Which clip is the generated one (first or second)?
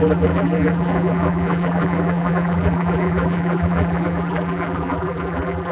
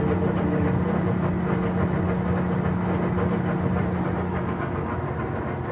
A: first